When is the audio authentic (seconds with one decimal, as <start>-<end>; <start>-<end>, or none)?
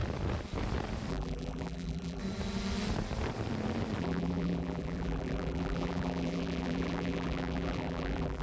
0.0-1.1; 2.2-4.0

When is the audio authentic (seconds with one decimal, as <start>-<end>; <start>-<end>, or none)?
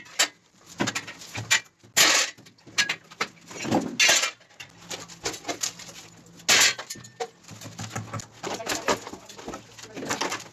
0.0-0.4; 0.9-10.5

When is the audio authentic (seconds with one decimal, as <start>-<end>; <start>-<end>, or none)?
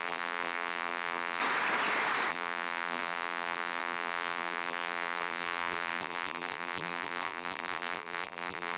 1.4-2.3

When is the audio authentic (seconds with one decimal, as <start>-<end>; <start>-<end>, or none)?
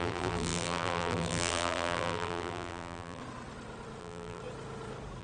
3.2-4.0; 4.4-5.2